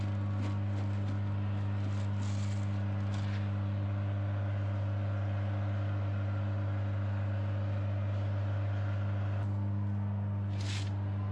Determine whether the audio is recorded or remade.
recorded